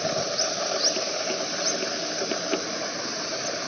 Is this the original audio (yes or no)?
yes